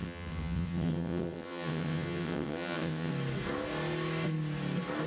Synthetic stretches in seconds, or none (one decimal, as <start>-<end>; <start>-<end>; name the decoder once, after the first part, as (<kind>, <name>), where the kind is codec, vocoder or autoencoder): 0.0-3.1 (vocoder, WaveNeXt)